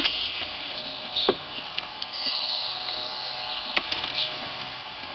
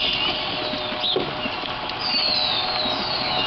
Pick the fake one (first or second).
first